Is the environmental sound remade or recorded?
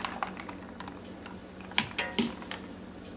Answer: recorded